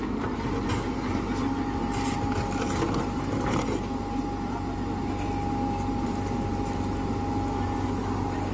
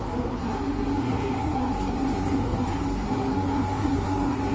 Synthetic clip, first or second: second